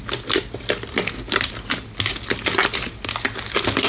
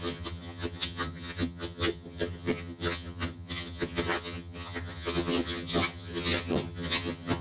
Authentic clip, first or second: first